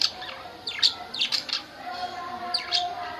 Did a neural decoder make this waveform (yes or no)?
yes